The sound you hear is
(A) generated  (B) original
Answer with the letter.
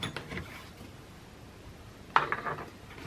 B